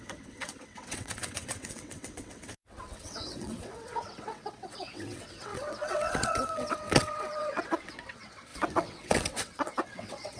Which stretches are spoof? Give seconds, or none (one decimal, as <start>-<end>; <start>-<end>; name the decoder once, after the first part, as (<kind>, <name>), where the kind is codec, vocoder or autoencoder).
0.0-10.4 (vocoder, WaveNeXt)